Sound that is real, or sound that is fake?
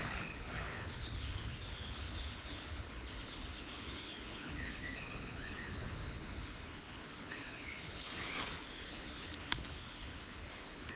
fake